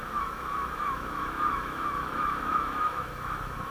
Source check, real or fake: fake